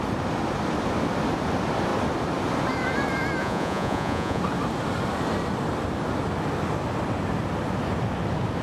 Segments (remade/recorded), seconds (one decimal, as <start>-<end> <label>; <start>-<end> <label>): 0.0-3.4 recorded; 3.4-4.4 remade; 4.4-8.6 recorded